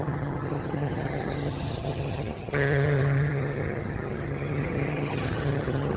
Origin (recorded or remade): remade